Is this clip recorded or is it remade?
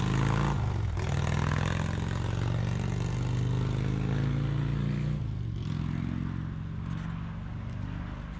recorded